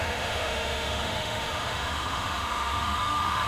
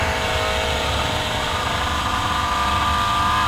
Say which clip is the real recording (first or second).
second